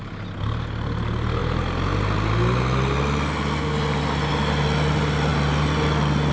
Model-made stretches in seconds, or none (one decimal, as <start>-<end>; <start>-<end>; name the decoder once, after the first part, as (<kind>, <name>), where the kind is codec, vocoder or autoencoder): none